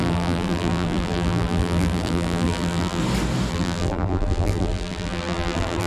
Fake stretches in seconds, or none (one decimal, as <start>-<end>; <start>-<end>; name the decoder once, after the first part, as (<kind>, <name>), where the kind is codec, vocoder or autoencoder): 0.0-3.0 (vocoder, BigVGAN v2); 3.5-5.9